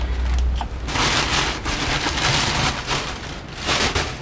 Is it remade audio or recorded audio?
recorded